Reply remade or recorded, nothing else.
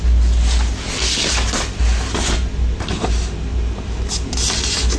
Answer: recorded